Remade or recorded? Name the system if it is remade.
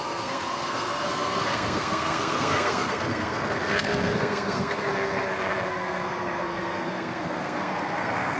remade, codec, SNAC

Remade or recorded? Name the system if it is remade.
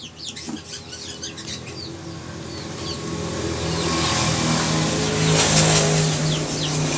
recorded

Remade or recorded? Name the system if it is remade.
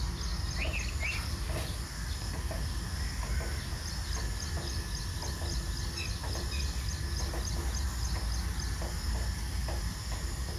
recorded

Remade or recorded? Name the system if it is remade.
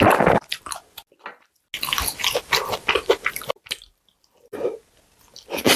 recorded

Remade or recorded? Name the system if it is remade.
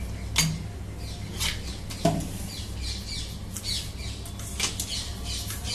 recorded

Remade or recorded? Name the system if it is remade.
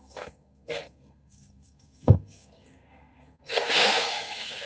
remade, codec, SNAC